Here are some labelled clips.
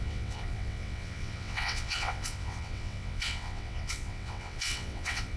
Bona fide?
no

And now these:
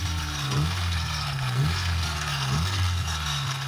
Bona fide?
no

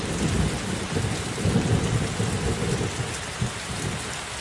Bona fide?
yes